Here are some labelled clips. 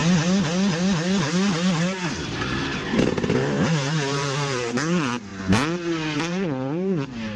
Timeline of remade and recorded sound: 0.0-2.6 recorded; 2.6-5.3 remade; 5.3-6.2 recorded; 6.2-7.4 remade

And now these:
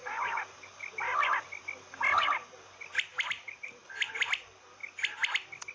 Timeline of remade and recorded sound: 0.0-0.6 remade; 0.6-3.1 recorded; 3.1-3.9 remade; 3.9-5.7 recorded